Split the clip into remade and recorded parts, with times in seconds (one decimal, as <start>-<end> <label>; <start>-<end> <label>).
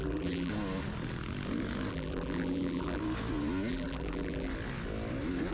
0.0-0.5 remade; 0.5-1.9 recorded; 1.9-3.0 remade; 3.0-3.7 recorded; 3.7-4.5 remade; 4.5-5.5 recorded